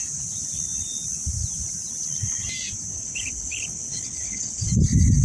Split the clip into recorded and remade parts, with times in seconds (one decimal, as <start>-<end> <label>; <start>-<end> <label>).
0.0-2.9 recorded; 2.9-4.7 remade; 4.7-5.2 recorded